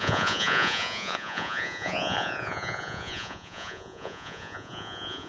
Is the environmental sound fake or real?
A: fake